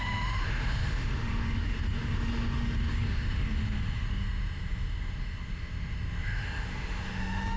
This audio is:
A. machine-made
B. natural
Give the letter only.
A